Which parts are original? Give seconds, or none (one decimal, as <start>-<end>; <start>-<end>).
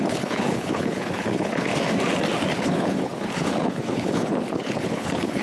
1.7-2.6